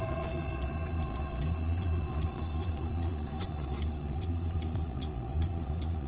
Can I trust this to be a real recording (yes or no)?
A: no